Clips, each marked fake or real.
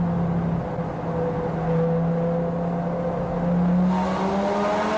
real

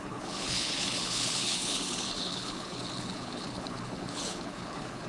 fake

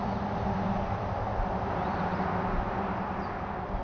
real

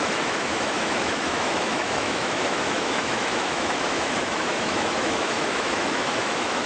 fake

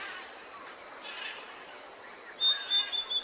real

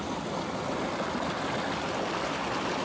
real